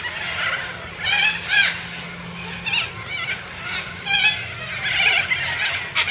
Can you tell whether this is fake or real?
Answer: real